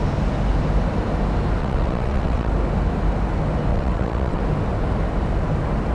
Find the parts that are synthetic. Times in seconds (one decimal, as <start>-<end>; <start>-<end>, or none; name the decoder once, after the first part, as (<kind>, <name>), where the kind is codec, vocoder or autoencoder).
1.6-2.5 (vocoder, WaveNeXt); 3.7-4.4